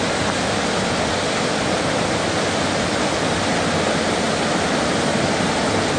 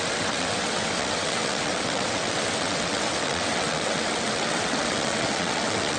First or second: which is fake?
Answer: second